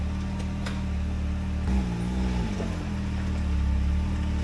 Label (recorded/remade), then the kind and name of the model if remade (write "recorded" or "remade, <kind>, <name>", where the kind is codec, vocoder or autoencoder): recorded